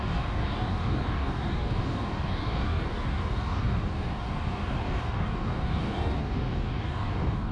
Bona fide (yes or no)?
no